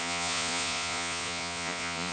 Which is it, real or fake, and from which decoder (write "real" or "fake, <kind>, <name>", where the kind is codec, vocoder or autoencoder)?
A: fake, vocoder, Vocos